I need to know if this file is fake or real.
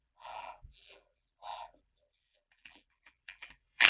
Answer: fake